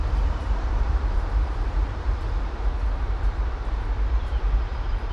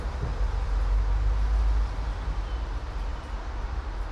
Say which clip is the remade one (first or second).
first